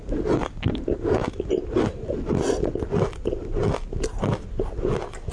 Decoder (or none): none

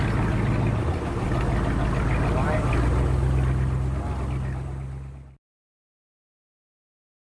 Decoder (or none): none